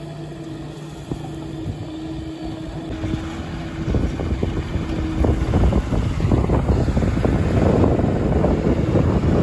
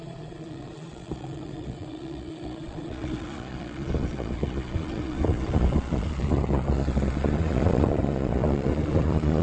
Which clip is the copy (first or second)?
second